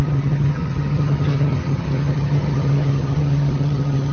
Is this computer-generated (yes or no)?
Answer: yes